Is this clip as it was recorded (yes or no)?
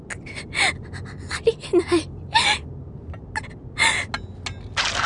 yes